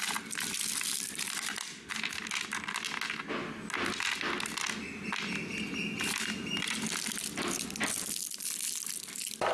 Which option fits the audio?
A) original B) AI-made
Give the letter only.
A